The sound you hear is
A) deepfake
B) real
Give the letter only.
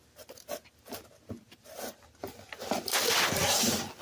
B